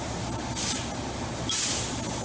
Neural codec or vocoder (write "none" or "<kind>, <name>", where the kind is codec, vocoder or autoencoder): none